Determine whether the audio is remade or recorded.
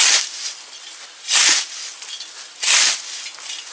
recorded